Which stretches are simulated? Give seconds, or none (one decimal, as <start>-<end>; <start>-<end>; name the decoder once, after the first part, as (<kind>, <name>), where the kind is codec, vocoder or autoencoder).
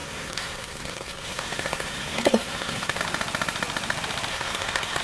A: 0.0-3.0 (codec, SNAC); 4.3-5.0